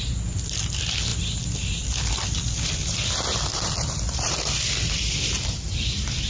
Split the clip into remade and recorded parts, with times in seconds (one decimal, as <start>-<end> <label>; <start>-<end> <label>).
0.0-1.1 recorded; 1.1-4.9 remade; 4.9-6.3 recorded